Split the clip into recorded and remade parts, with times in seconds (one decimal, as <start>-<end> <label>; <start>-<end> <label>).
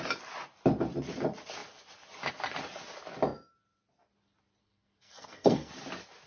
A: 0.0-4.6 recorded; 4.6-5.7 remade; 5.7-6.3 recorded